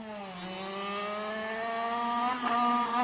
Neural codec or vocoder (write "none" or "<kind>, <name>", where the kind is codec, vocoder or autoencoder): none